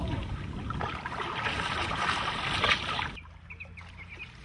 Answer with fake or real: real